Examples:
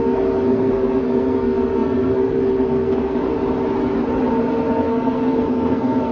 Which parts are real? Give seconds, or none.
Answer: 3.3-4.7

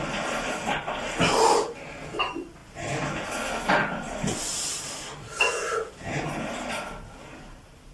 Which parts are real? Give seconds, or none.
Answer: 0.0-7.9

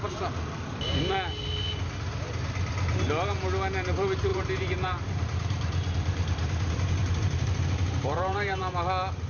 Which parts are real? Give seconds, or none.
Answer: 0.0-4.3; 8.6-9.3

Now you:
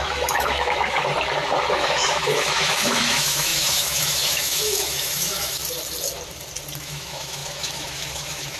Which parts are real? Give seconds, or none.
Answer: 1.0-1.7; 5.6-6.8

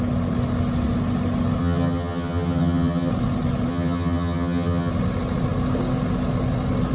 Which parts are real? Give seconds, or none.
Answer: 0.0-1.6; 3.1-3.7; 4.9-6.9

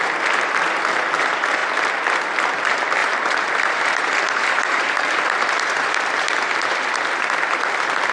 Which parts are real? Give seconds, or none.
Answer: 0.0-3.0; 5.6-8.1